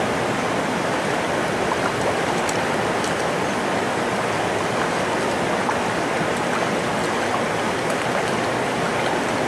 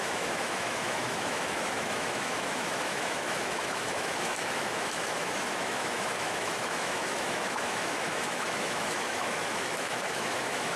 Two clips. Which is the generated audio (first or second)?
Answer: second